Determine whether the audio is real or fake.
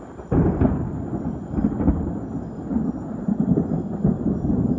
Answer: real